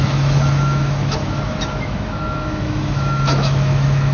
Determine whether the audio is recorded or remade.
remade